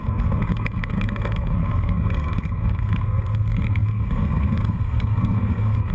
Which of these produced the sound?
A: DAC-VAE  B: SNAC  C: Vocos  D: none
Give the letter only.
B